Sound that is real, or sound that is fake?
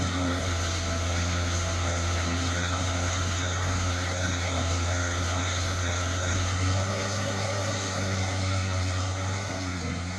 fake